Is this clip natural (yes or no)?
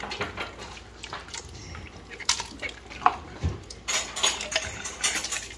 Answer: yes